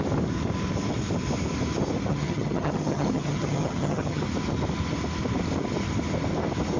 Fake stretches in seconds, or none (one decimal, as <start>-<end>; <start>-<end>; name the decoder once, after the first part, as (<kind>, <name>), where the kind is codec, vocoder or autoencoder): 2.1-4.2 (vocoder, HiFi-GAN)